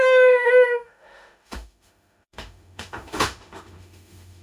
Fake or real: fake